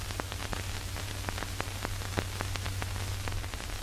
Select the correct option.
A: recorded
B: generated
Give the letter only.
A